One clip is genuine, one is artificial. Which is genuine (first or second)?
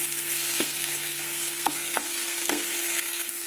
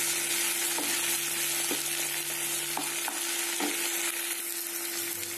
second